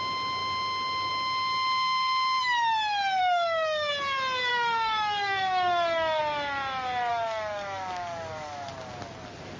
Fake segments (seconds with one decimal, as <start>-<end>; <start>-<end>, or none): 3.2-3.9; 4.5-6.2; 7.1-8.8